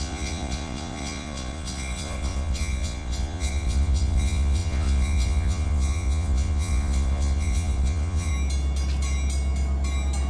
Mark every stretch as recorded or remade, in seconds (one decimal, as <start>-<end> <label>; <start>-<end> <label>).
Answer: 0.0-8.3 remade; 8.3-10.3 recorded